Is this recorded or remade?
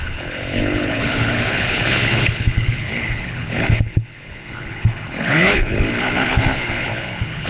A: remade